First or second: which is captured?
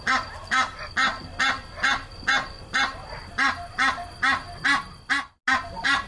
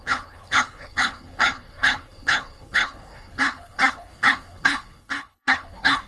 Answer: first